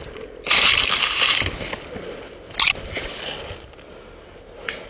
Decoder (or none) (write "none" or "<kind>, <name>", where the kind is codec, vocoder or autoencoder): none